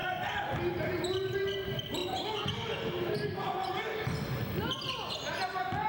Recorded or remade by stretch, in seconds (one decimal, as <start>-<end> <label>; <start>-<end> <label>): 0.0-5.9 recorded